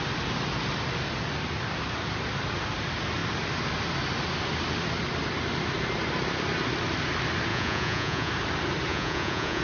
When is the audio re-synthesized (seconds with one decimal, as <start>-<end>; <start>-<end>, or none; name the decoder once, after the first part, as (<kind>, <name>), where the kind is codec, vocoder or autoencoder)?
7.5-8.3 (vocoder, Vocos); 8.9-9.6